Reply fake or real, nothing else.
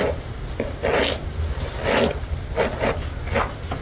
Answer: real